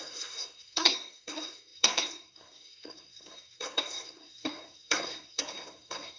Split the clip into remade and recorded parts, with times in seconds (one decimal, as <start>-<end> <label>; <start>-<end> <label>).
0.0-6.2 remade